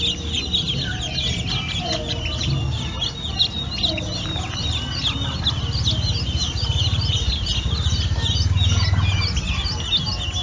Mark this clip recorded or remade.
recorded